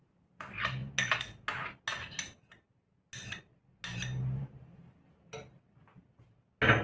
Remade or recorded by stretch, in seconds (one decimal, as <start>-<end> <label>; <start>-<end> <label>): 0.0-6.8 recorded